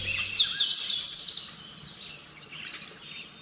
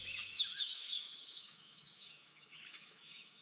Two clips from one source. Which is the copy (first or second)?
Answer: second